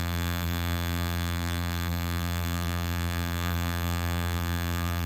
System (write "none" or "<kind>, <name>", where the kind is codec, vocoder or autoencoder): vocoder, BigVGAN v2